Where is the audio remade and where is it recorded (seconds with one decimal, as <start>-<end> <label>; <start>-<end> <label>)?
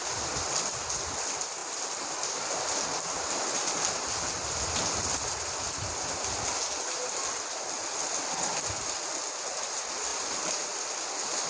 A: 0.0-7.8 recorded; 7.8-9.2 remade; 9.2-10.1 recorded; 10.1-11.1 remade; 11.1-11.5 recorded